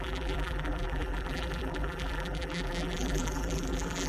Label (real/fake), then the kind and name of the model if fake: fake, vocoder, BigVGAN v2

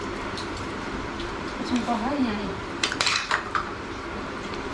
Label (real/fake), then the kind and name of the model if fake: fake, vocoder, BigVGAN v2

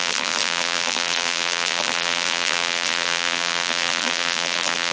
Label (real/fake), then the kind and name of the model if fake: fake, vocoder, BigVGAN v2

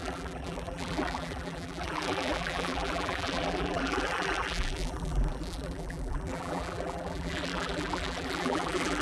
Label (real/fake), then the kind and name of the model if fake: fake, vocoder, BigVGAN v2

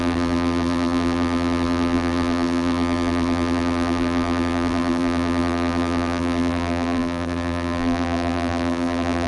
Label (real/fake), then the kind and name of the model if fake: fake, vocoder, BigVGAN v2